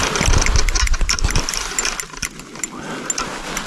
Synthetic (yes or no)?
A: no